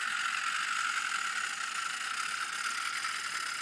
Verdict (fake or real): real